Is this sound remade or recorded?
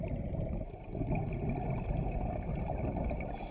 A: recorded